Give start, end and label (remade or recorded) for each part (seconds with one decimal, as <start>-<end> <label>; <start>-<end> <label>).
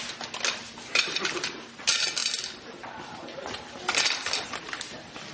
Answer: 0.0-5.3 recorded